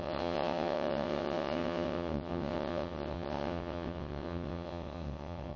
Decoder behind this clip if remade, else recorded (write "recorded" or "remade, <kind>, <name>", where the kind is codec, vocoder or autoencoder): remade, vocoder, WaveNeXt